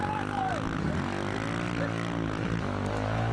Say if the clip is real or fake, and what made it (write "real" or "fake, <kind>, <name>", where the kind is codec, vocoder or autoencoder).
real